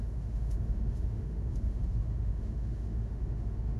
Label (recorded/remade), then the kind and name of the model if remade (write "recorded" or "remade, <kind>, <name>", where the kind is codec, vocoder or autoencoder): remade, autoencoder, DAC-VAE